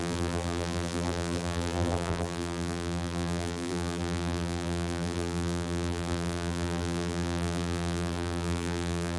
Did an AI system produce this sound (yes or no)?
yes